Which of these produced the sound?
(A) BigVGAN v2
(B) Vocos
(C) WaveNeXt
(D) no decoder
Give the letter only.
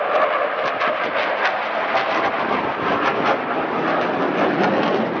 D